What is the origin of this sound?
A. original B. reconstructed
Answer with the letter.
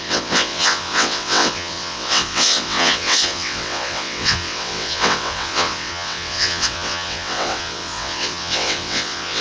B